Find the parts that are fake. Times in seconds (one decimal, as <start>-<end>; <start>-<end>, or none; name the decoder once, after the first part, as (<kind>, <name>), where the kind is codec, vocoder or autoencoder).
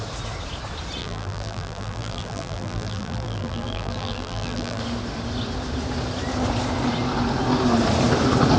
1.0-4.8 (vocoder, BigVGAN v2)